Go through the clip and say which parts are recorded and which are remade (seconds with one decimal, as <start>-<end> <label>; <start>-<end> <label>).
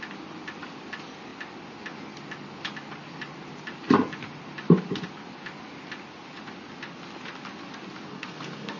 0.0-8.1 recorded; 8.1-8.8 remade